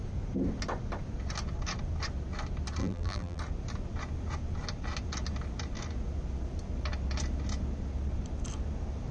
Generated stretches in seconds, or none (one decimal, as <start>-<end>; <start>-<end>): 2.8-3.4